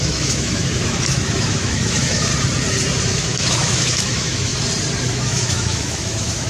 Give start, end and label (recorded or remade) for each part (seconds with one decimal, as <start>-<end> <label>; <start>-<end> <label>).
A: 0.0-2.3 remade; 2.3-3.0 recorded; 3.0-4.5 remade; 4.5-5.1 recorded; 5.1-6.5 remade